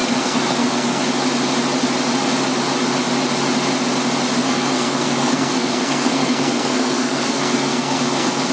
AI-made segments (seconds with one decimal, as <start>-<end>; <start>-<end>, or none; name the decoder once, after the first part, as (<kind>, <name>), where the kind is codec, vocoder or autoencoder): 0.0-1.0 (codec, SNAC); 4.4-8.5